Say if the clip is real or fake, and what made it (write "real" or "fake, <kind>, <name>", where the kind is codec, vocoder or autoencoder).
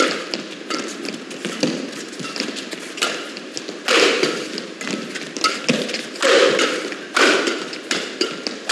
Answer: real